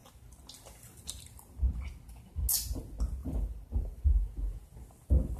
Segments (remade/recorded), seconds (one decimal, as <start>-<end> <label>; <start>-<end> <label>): 0.0-3.2 recorded; 3.2-4.0 remade; 4.0-5.4 recorded